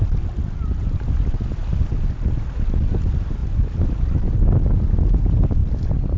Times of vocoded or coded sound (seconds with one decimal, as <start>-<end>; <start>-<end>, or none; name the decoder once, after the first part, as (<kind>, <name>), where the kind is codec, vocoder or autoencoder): none